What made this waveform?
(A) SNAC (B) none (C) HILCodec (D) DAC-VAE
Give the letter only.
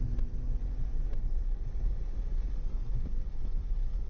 B